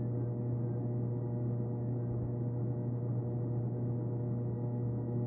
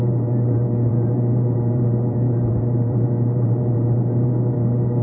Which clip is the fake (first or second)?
second